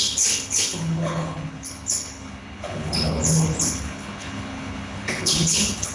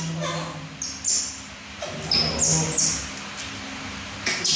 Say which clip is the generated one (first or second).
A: first